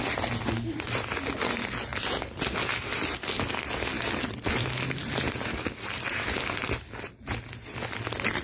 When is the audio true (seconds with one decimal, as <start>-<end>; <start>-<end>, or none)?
0.0-8.4